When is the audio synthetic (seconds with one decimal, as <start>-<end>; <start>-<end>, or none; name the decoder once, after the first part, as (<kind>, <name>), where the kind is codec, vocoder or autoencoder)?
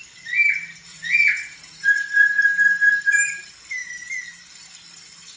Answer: 0.9-2.4 (vocoder, Vocos)